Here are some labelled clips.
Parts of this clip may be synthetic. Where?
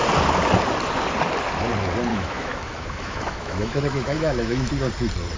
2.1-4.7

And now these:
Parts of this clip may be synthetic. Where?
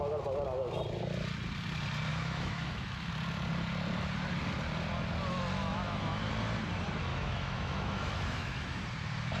2.1-3.1; 5.6-6.2; 7.1-8.8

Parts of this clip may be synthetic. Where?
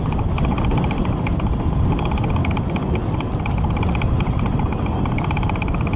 none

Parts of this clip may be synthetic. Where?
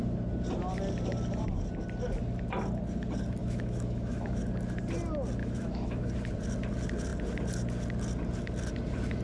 3.4-4.4; 5.4-6.1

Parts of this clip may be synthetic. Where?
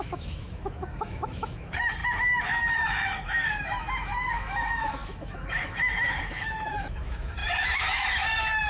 0.0-8.7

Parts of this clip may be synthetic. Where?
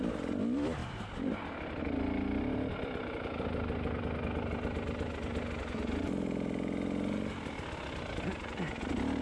none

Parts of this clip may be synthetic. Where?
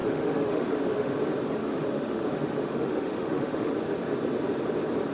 0.0-1.1; 1.6-3.7